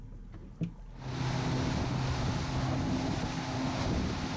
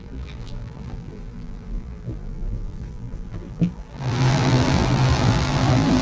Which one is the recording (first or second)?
first